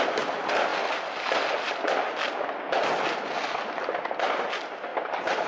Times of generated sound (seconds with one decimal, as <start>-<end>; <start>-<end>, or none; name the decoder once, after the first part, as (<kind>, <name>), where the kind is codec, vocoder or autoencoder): 4.9-5.5 (vocoder, BigVGAN v2)